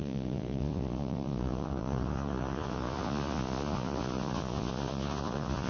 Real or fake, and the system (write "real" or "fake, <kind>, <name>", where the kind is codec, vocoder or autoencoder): fake, vocoder, Vocos